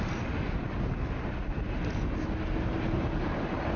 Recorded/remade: recorded